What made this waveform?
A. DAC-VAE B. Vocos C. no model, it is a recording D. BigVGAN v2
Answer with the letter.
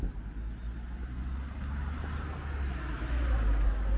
C